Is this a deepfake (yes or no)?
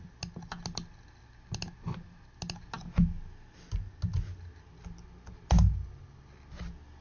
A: no